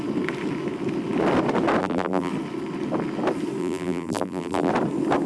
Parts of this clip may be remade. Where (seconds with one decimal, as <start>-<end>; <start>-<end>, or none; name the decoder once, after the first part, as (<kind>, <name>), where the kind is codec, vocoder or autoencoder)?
1.8-2.3 (vocoder, BigVGAN v2); 3.6-4.7